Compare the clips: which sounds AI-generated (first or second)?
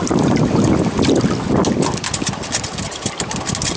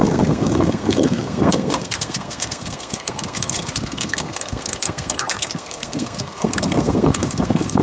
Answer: second